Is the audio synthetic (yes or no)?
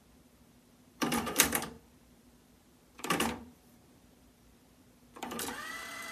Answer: yes